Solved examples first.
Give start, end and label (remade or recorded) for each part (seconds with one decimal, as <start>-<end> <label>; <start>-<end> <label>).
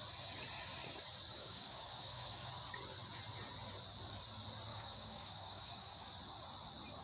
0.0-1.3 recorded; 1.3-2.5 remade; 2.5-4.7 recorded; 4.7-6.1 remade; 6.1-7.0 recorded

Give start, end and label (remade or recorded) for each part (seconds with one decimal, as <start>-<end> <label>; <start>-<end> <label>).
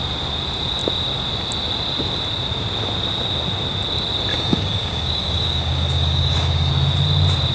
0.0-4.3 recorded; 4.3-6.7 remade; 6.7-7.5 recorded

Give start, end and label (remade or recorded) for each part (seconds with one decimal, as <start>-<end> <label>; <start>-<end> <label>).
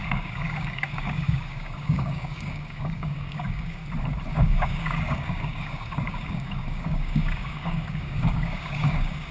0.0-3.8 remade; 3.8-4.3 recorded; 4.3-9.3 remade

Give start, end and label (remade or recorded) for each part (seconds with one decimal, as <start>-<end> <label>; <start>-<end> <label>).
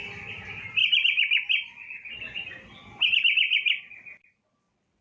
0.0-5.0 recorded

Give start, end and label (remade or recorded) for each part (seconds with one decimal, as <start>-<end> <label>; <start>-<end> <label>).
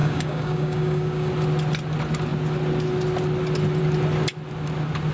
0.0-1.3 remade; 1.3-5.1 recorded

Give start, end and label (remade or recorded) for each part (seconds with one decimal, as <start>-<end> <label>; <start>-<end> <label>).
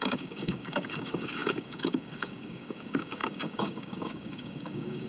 0.0-5.1 remade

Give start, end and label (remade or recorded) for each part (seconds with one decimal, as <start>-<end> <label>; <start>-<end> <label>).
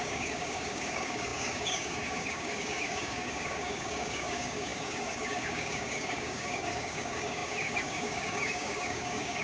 0.0-9.4 remade